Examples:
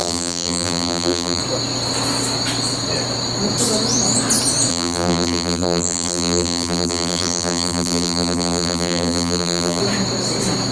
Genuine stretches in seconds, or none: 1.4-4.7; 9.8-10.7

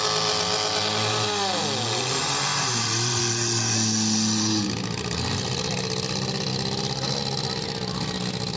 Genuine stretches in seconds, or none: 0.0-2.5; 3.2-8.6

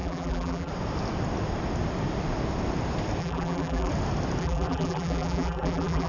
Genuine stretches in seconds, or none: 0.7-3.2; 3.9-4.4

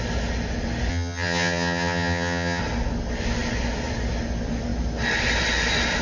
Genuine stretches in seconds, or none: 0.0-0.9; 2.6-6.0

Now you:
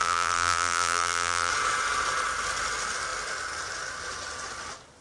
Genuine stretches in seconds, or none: 1.5-5.0

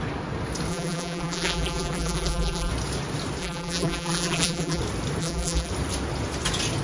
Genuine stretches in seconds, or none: 0.0-0.7; 2.7-3.4; 4.8-5.2; 5.7-6.8

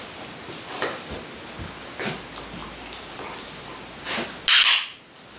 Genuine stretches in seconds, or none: 0.0-5.4

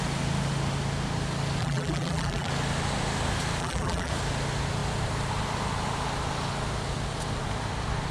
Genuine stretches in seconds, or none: 0.0-1.6; 2.5-3.6; 4.1-8.1